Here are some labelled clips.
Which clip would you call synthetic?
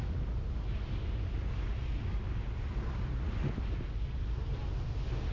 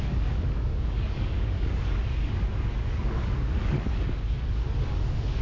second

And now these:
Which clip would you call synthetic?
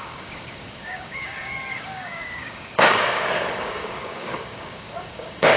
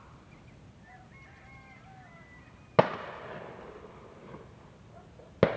first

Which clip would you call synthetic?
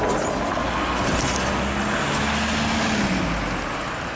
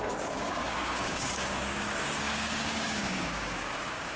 second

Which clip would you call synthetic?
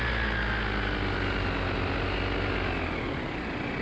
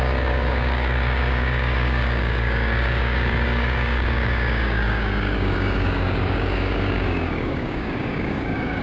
second